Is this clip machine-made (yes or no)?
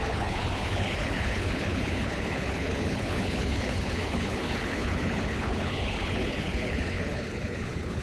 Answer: yes